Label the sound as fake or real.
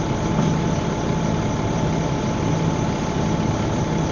real